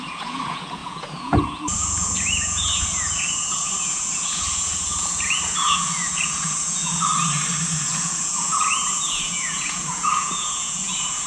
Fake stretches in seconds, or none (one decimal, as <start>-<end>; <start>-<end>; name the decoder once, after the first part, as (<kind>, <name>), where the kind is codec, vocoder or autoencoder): 0.0-7.1 (vocoder, Vocos); 7.7-11.3